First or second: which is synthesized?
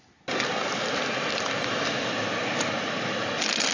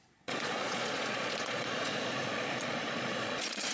second